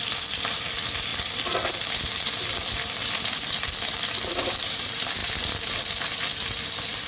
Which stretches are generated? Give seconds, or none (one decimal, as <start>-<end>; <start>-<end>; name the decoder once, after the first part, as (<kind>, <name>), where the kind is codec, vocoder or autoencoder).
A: 0.0-7.1 (vocoder, BigVGAN v2)